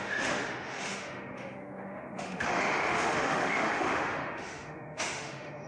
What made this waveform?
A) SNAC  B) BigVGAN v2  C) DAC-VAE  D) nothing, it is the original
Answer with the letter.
C